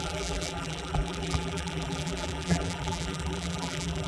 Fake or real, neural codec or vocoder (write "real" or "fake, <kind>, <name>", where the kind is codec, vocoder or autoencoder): fake, vocoder, BigVGAN v2